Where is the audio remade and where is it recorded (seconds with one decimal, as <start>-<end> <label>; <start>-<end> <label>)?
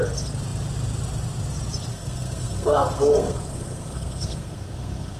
0.0-1.9 recorded; 1.9-5.2 remade